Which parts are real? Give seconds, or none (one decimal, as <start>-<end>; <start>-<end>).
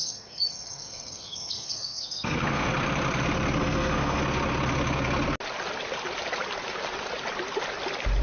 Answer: 2.7-3.6; 4.2-8.2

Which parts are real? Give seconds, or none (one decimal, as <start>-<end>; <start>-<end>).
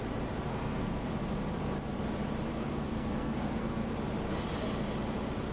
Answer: 0.0-0.5; 1.1-2.5; 3.9-5.5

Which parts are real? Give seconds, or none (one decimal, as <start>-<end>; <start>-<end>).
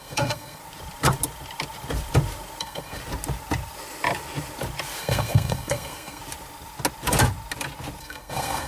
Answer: 0.6-2.6; 3.0-5.0; 6.2-8.0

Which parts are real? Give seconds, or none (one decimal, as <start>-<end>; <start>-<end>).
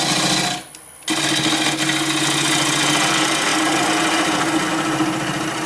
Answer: 0.0-5.7